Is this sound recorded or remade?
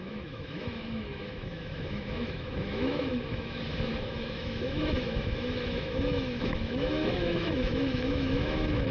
remade